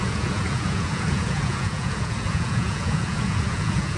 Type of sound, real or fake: fake